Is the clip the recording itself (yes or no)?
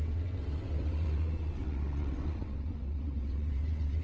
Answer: no